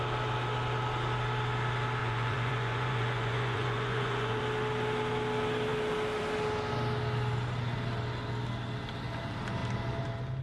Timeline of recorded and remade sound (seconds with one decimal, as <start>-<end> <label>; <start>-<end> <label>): 0.0-2.0 recorded; 2.0-4.4 remade; 4.4-10.4 recorded